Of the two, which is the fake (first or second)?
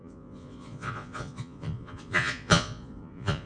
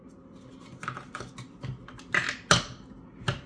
first